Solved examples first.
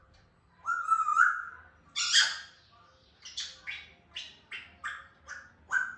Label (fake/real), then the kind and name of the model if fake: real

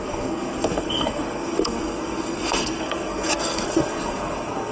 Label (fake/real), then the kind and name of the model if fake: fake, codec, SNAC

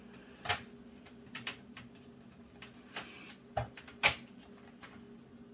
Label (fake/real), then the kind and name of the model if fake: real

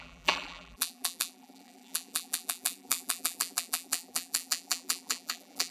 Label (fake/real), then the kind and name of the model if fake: fake, vocoder, BigVGAN v2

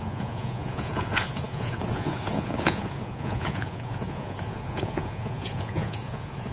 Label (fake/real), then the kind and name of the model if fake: fake, vocoder, Vocos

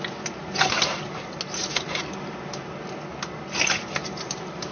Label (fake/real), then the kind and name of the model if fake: real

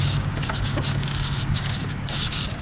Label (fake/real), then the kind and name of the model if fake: fake, codec, DAC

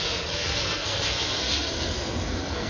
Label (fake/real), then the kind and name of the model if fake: fake, codec, SNAC